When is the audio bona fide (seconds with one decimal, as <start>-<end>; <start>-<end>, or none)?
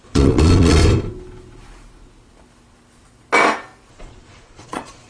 0.8-3.9